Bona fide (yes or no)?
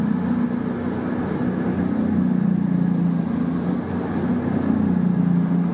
yes